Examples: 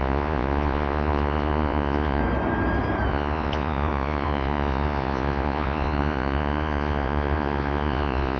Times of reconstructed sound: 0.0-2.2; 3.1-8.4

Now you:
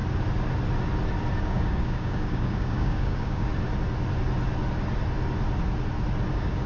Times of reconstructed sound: 1.4-3.5; 6.3-6.7

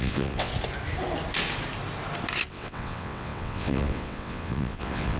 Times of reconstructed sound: 0.0-0.5; 2.5-5.2

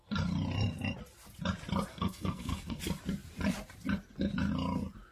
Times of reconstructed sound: 1.9-2.8